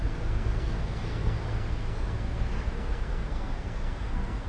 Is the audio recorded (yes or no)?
no